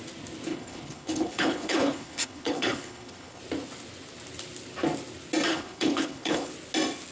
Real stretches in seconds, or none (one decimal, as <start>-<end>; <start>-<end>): 0.0-0.5; 3.4-5.5; 6.5-7.1